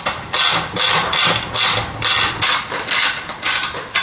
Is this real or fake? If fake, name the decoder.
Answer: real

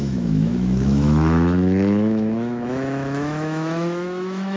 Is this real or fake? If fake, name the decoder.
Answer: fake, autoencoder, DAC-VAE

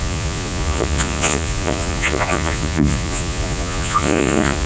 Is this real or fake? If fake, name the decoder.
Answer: fake, vocoder, Vocos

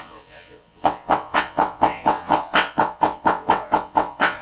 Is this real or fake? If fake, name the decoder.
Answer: fake, vocoder, WaveNeXt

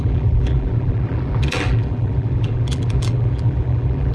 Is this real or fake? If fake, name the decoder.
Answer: fake, vocoder, BigVGAN v2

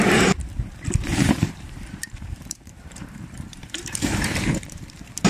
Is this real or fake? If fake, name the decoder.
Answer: fake, vocoder, BigVGAN v2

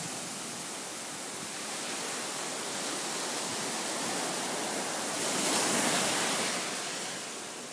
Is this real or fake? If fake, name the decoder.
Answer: real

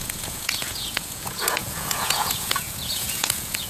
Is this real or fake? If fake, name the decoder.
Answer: fake, vocoder, Vocos